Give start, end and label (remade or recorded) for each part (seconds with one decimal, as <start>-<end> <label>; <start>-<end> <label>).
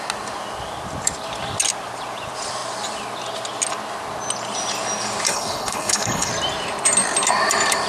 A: 0.0-5.3 recorded; 5.3-6.3 remade; 6.3-7.9 recorded